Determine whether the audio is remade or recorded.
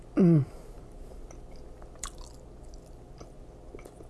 recorded